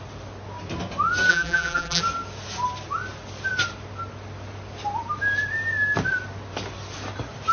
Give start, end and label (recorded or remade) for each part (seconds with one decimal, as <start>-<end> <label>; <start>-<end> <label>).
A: 0.0-1.3 recorded; 1.3-2.0 remade; 2.0-7.5 recorded